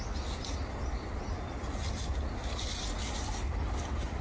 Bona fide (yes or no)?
yes